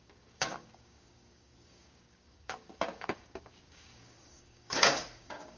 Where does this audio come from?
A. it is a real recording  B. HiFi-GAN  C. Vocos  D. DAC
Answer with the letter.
D